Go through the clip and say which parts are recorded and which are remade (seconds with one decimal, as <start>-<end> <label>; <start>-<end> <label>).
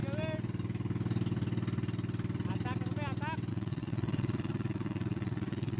0.0-3.5 recorded; 3.5-5.8 remade